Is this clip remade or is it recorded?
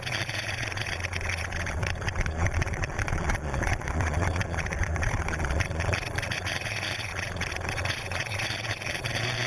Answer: remade